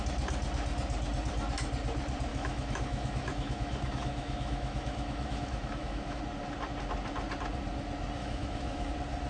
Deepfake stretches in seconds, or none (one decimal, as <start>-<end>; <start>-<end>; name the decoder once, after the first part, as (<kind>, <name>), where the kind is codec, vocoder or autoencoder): 2.3-6.2 (autoencoder, DAC-VAE); 8.2-8.9